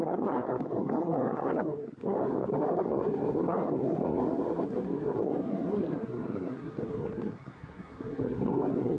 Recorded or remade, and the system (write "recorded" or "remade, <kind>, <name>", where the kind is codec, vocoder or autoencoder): remade, codec, SNAC